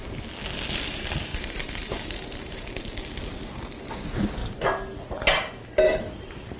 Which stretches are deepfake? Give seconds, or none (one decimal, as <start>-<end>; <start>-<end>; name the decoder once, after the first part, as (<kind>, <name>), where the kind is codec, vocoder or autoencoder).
1.3-2.7 (vocoder, BigVGAN v2)